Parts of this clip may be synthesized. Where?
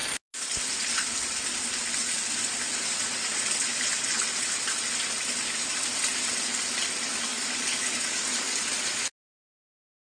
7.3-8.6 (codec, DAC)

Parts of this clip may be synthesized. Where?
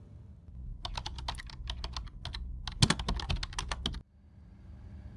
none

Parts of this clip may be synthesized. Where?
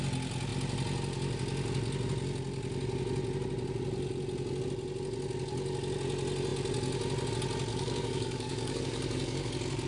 7.7-9.5 (codec, DAC)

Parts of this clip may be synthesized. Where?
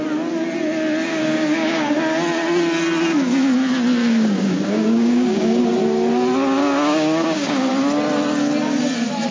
1.1-2.0 (codec, DAC); 4.0-5.6; 6.6-7.7